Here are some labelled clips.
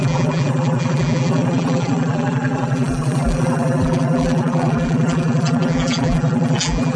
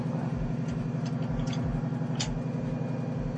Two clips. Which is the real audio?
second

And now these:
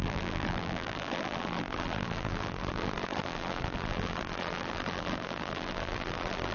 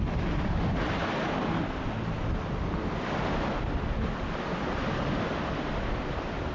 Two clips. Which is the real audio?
second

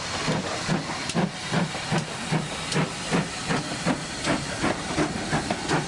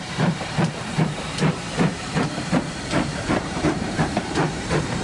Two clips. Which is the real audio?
first